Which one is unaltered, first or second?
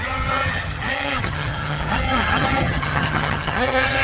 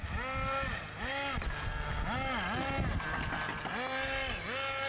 second